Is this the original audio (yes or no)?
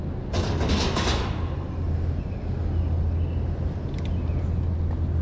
yes